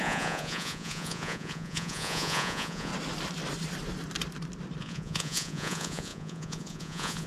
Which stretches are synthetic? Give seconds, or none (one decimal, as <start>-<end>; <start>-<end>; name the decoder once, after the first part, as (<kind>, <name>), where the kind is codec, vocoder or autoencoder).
0.0-2.9 (vocoder, Vocos); 4.8-7.3